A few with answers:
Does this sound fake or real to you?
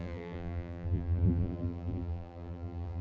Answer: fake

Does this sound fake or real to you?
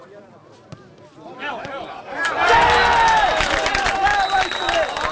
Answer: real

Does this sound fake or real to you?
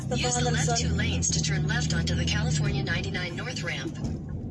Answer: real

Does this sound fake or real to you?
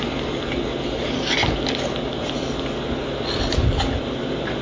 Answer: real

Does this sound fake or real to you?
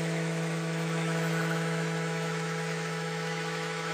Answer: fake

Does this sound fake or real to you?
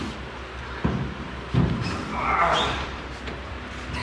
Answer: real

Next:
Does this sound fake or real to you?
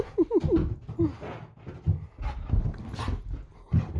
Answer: real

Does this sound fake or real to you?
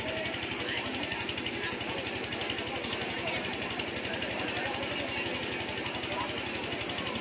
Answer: real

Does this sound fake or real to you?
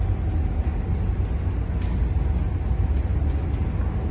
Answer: real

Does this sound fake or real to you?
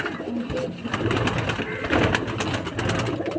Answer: real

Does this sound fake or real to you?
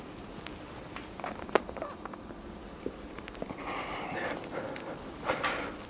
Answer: real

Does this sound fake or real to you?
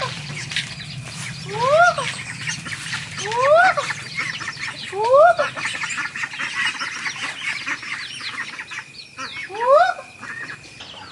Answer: real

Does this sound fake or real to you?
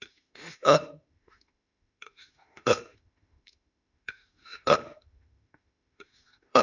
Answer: fake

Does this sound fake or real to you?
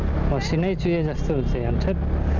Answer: real